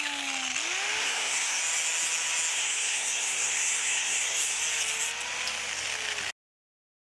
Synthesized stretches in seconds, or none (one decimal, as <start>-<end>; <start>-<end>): 1.0-1.6; 2.5-4.6